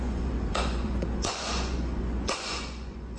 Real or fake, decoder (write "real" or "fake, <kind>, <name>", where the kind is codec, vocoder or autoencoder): fake, vocoder, Vocos